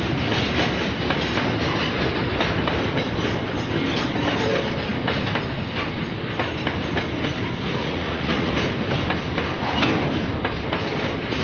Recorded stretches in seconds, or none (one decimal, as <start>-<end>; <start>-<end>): 0.0-7.8; 8.5-11.4